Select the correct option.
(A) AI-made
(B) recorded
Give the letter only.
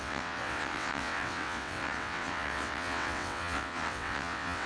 A